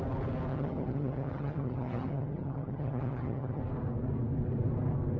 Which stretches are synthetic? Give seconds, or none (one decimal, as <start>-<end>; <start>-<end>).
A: 0.5-3.6